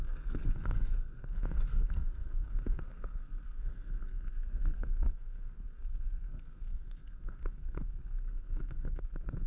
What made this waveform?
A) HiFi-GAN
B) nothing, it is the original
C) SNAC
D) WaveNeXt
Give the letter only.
C